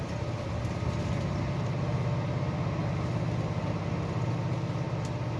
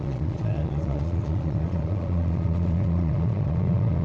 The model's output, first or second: second